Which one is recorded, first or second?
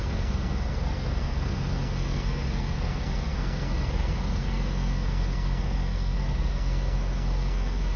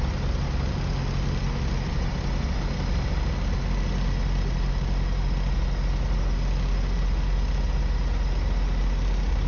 second